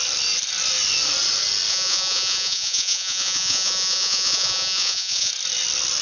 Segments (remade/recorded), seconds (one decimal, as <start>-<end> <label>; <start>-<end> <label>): 0.0-1.7 recorded; 1.7-5.3 remade; 5.3-6.0 recorded